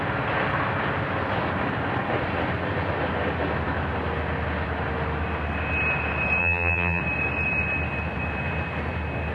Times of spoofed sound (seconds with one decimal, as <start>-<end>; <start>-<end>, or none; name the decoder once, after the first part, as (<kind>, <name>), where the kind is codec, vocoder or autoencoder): 6.4-7.0 (vocoder, BigVGAN v2)